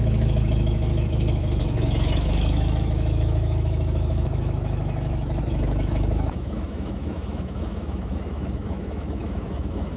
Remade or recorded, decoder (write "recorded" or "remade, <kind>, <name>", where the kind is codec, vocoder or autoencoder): remade, autoencoder, DAC-VAE